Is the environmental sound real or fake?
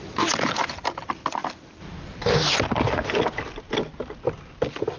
real